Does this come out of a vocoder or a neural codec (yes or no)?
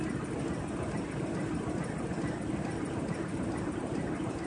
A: no